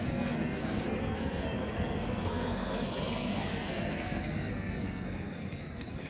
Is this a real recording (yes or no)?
no